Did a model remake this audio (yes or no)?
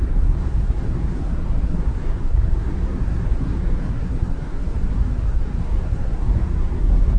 yes